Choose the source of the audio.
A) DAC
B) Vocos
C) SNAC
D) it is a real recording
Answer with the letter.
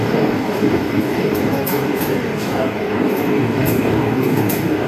A